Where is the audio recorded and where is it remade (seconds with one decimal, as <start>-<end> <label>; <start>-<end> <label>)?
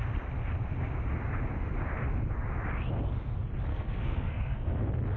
0.0-3.7 recorded; 3.7-4.8 remade; 4.8-5.2 recorded